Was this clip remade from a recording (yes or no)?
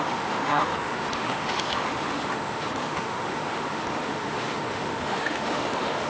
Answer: yes